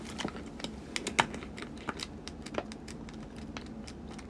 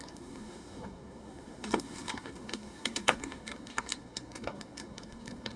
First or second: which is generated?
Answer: second